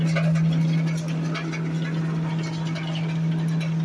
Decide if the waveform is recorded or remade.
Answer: recorded